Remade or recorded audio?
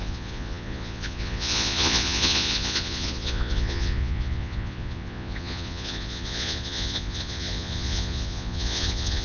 remade